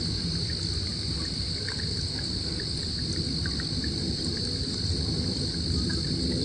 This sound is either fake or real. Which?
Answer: real